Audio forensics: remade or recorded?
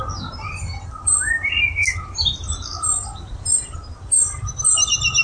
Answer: recorded